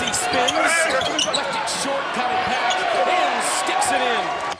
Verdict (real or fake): fake